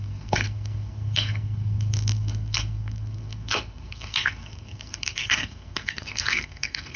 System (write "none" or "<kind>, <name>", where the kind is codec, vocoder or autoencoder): codec, SNAC